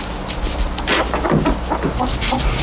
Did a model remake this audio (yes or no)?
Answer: no